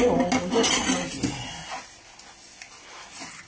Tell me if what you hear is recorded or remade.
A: recorded